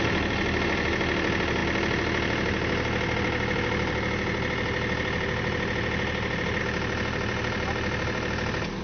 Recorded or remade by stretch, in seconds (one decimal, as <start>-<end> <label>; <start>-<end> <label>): 0.0-8.8 recorded